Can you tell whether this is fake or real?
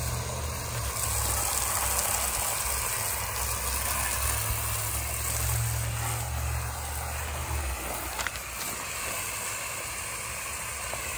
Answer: real